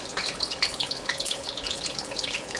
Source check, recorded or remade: remade